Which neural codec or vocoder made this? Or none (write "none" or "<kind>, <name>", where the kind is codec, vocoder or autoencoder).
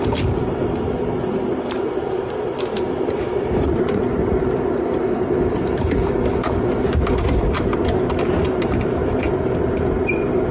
vocoder, BigVGAN v2